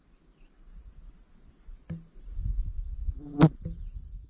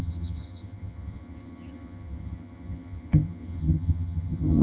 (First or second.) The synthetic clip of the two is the second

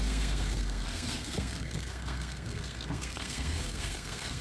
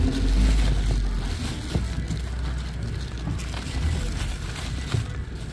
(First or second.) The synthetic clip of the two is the first